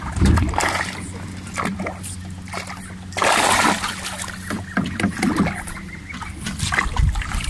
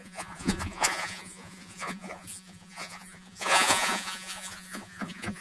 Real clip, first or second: first